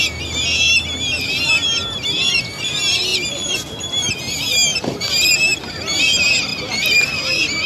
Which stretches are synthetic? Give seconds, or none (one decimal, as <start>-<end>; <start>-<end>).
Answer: 4.7-5.3; 6.5-7.2